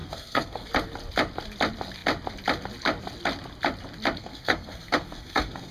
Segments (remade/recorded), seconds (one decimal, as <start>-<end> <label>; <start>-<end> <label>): 0.0-0.7 remade; 0.7-4.2 recorded; 4.2-5.7 remade